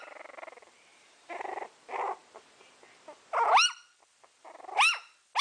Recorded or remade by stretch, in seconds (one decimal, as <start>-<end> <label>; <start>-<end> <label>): 0.0-0.9 recorded; 0.9-1.5 remade; 1.5-5.4 recorded